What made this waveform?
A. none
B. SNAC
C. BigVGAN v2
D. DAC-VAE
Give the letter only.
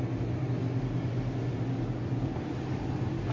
A